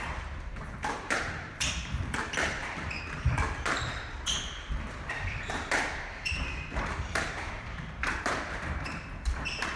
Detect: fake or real fake